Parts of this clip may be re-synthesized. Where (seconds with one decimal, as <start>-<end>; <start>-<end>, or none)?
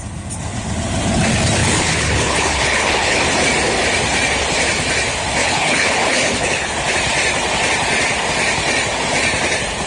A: 1.6-3.2; 5.4-6.7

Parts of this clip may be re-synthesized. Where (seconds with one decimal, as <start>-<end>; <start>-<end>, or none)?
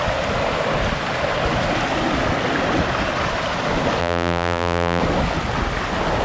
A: 4.0-5.0